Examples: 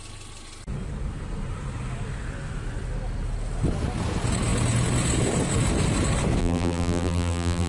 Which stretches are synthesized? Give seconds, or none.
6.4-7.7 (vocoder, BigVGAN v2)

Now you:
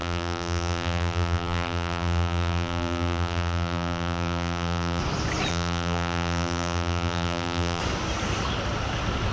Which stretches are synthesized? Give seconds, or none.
0.0-5.0 (vocoder, BigVGAN v2); 5.5-7.8

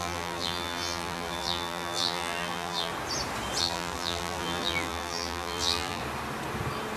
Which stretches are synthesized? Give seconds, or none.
0.0-2.9 (vocoder, BigVGAN v2); 3.6-6.0